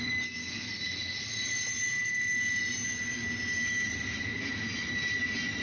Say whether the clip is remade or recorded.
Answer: recorded